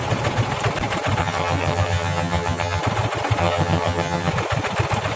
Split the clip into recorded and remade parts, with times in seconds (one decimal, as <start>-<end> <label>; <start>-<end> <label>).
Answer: 0.0-1.2 recorded; 1.2-2.8 remade; 2.8-3.4 recorded; 3.4-4.3 remade; 4.3-5.2 recorded